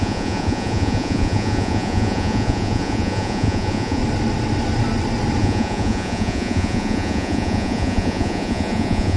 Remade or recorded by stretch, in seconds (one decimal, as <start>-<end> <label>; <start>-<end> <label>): 0.0-4.0 remade; 4.0-5.4 recorded; 5.4-9.2 remade